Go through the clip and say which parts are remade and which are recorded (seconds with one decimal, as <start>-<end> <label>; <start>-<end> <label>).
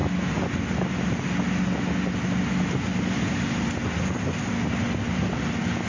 0.0-5.9 recorded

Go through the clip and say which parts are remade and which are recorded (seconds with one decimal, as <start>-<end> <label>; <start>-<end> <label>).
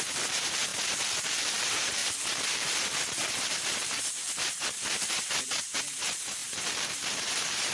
0.0-0.7 remade; 0.7-1.4 recorded; 1.4-2.0 remade; 2.0-3.7 recorded; 3.7-7.7 remade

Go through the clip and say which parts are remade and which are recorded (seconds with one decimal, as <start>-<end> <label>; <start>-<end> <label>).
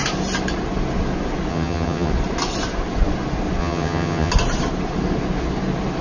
0.0-1.5 recorded; 1.5-2.1 remade; 2.1-3.6 recorded; 3.6-4.3 remade; 4.3-6.0 recorded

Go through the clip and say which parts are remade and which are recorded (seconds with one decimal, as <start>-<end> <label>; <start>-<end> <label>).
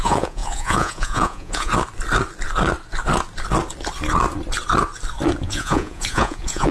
0.0-1.7 remade; 1.7-5.4 recorded; 5.4-6.7 remade